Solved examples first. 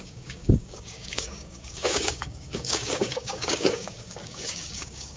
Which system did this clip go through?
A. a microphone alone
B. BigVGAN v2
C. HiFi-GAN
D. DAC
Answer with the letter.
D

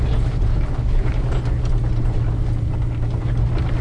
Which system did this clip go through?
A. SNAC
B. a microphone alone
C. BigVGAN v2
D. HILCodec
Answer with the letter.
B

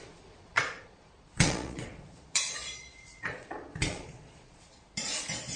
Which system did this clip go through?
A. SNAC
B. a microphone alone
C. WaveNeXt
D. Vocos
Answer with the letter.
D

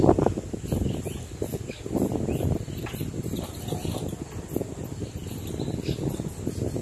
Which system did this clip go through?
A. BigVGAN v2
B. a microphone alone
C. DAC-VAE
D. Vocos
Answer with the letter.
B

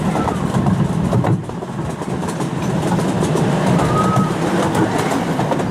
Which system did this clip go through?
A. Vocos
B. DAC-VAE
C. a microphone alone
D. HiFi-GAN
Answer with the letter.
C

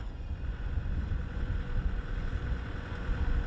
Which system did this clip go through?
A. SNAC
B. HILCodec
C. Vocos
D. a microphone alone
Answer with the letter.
C